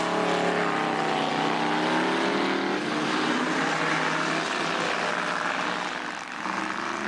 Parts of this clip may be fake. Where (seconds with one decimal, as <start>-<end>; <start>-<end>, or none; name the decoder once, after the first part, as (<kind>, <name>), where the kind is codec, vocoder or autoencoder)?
none